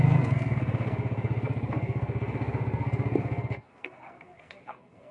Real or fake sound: fake